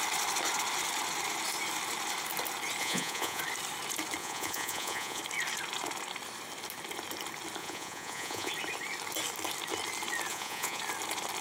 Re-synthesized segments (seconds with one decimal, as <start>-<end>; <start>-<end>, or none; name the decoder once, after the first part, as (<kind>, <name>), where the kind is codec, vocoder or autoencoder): 2.8-3.4 (vocoder, Vocos); 4.2-5.2; 7.6-8.5; 10.3-10.8